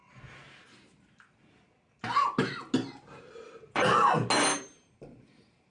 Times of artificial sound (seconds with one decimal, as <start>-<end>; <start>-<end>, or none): 3.1-3.9; 4.6-5.7